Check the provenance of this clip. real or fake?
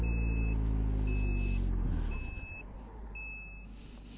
real